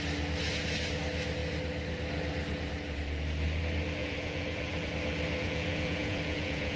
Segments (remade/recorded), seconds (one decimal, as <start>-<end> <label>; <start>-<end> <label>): 0.0-4.0 recorded; 4.0-4.9 remade; 4.9-5.4 recorded; 5.4-6.8 remade